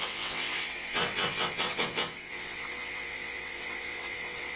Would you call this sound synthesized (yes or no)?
yes